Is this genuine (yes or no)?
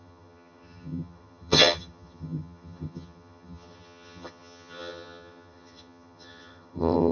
no